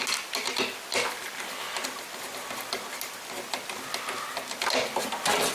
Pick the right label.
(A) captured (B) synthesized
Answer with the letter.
A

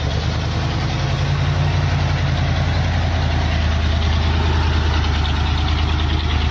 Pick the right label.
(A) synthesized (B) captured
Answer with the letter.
B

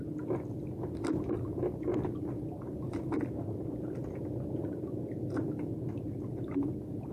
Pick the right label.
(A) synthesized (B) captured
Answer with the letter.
B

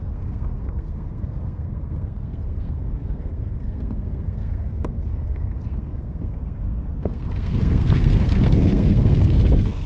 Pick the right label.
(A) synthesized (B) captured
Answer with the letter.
A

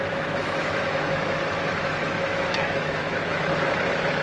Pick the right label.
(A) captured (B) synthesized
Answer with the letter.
B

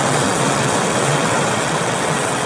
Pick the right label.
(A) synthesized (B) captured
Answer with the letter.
A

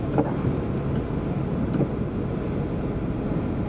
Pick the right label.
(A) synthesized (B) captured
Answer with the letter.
B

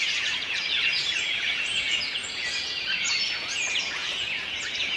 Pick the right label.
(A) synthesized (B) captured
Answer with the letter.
A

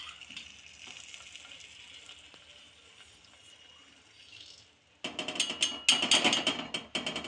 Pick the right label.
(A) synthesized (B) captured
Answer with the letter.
B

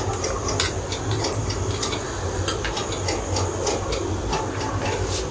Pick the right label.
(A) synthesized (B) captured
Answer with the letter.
B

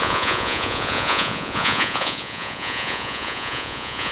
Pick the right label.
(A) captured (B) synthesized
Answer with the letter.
B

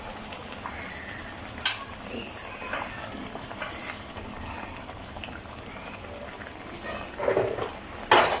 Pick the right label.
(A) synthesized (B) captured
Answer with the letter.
B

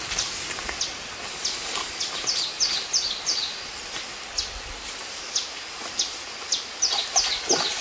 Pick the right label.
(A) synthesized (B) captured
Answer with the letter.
B